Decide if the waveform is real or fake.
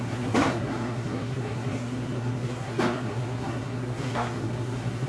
fake